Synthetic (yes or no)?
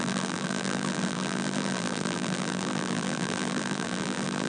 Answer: yes